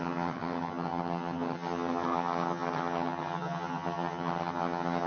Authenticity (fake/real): fake